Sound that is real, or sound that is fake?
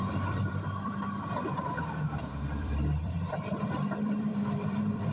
fake